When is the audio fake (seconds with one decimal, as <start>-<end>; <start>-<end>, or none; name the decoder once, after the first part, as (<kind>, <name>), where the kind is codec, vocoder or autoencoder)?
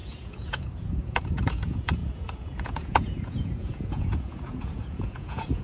0.0-5.6 (vocoder, Vocos)